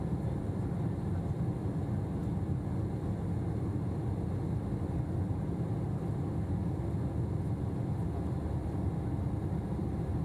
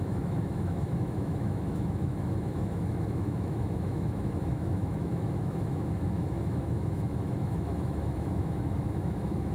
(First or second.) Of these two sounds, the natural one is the first